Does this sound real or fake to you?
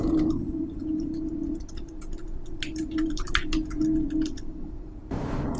fake